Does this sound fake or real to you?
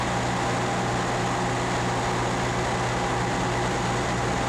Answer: real